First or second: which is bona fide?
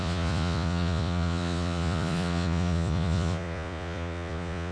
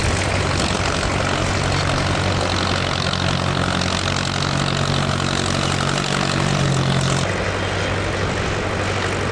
second